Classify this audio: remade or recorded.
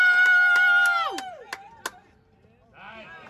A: recorded